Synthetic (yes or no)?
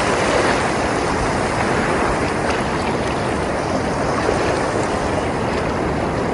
no